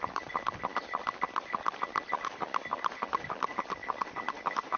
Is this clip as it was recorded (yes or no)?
yes